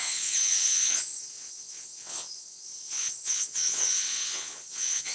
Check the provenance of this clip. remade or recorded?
remade